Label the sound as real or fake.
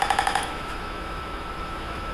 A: fake